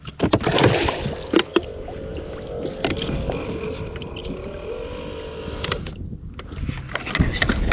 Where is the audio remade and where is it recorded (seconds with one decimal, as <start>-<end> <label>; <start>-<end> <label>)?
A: 0.0-1.5 recorded; 1.5-2.1 remade; 2.1-7.7 recorded